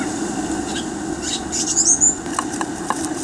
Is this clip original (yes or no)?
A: yes